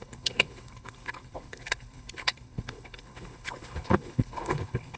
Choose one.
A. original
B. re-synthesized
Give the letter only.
B